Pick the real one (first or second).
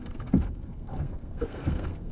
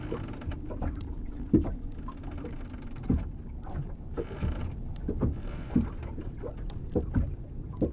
second